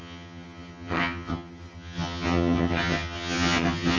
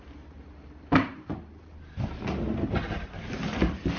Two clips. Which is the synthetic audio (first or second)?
first